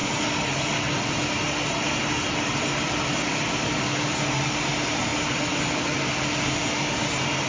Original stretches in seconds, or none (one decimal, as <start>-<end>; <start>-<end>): 0.0-7.5